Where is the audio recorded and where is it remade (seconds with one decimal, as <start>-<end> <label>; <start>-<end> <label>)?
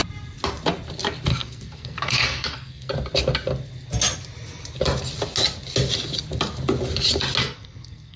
0.0-1.3 recorded; 1.3-2.9 remade; 2.9-7.4 recorded; 7.4-8.2 remade